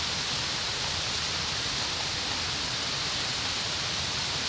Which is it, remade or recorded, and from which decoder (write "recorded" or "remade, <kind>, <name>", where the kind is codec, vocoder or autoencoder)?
recorded